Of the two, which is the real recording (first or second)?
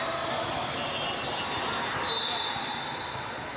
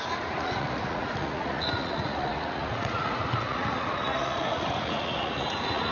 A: first